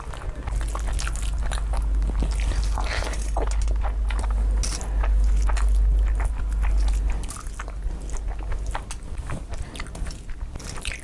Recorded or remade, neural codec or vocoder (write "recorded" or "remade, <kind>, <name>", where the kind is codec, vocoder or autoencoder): recorded